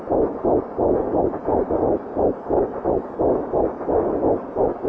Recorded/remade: recorded